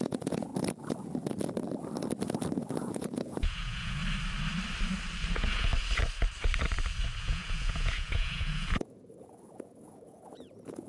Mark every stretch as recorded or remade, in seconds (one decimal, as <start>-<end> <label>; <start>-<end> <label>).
0.0-0.5 remade; 0.5-2.8 recorded; 2.8-4.0 remade; 4.0-5.3 recorded; 5.3-5.7 remade; 5.7-7.2 recorded; 7.2-10.9 remade